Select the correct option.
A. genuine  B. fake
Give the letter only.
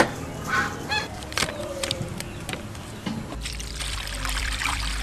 B